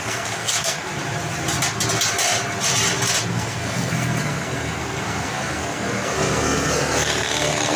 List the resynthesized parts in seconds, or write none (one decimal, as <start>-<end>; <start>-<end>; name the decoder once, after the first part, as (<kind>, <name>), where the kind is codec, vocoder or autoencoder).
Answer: 0.0-0.9 (codec, SNAC); 3.3-7.8